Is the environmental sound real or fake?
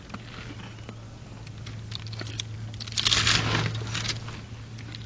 real